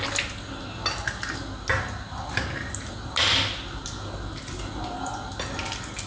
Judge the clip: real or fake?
real